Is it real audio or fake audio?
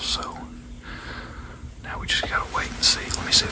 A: real